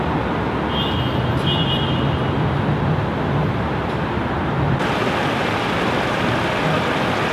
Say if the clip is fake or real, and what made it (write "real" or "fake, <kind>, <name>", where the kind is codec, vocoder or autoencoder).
real